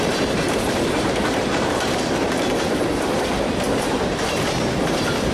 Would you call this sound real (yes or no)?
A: no